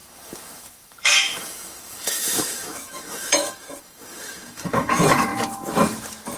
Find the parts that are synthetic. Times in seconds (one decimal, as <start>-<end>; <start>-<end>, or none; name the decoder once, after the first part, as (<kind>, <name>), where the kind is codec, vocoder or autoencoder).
0.0-6.4 (autoencoder, DAC-VAE)